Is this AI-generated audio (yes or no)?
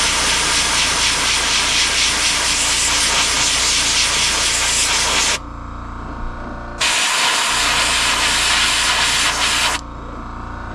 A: no